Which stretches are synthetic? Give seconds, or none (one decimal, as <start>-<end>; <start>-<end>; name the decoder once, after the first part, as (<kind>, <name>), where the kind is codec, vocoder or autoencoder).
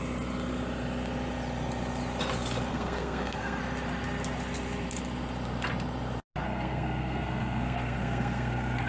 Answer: 2.7-3.6 (codec, SNAC); 6.4-8.9